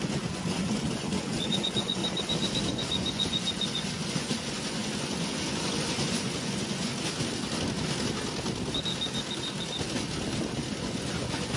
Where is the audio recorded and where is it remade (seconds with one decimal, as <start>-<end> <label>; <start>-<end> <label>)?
0.0-2.0 remade; 2.0-2.7 recorded; 2.7-6.9 remade; 6.9-10.8 recorded; 10.8-11.6 remade